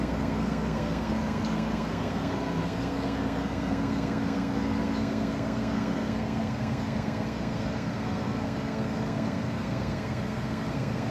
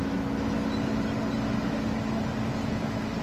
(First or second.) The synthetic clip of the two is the first